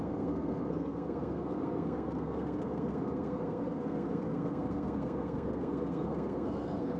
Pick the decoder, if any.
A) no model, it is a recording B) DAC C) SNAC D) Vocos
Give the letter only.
C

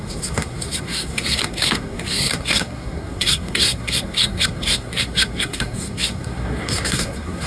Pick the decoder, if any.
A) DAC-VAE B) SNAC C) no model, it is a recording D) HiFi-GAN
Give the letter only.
B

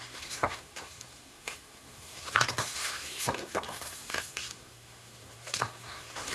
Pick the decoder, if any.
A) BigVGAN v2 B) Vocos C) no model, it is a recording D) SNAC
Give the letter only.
D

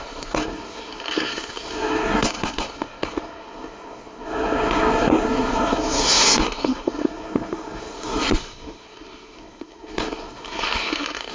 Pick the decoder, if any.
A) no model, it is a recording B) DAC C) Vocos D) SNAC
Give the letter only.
D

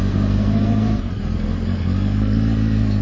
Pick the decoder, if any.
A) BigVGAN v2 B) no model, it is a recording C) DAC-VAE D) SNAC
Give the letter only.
D